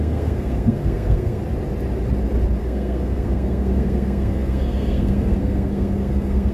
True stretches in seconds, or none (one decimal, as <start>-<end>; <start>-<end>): 1.4-2.6